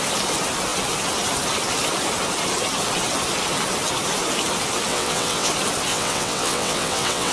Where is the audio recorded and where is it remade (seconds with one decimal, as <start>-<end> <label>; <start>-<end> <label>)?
0.0-4.9 recorded; 4.9-5.5 remade; 5.5-5.9 recorded; 5.9-7.3 remade